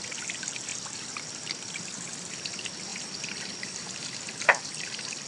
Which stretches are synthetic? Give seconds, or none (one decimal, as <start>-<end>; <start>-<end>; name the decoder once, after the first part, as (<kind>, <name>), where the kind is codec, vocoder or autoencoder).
0.7-2.3 (vocoder, BigVGAN v2); 2.9-5.3